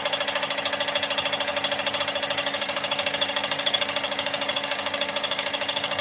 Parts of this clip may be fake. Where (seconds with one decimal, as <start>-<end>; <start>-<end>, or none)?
2.4-6.0